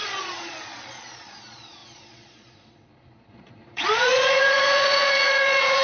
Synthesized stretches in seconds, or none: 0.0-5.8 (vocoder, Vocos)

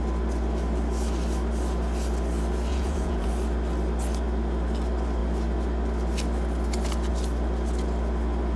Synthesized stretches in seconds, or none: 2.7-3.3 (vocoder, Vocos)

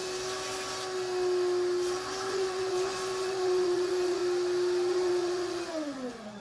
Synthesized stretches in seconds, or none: 2.3-4.2 (vocoder, Vocos); 4.9-6.4

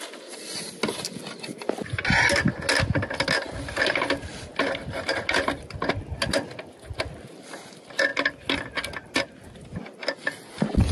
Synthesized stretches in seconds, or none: none